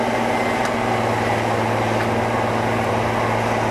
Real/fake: real